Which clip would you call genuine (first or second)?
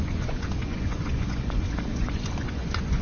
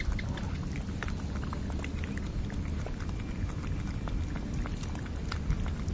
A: second